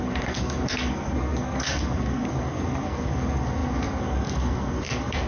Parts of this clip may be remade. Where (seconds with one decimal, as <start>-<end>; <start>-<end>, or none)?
0.0-5.3

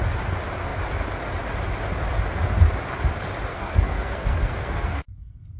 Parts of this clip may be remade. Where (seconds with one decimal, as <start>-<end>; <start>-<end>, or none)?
3.5-5.6

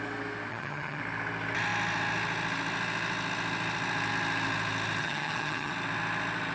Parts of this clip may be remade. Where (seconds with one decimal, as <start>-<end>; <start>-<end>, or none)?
0.5-1.0; 5.0-5.7

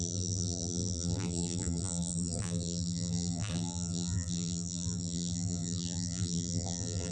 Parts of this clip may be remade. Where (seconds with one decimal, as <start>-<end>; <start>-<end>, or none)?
0.0-7.1

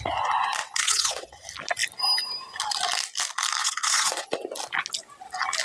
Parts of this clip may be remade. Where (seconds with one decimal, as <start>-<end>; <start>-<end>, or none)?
0.6-1.3; 3.6-4.3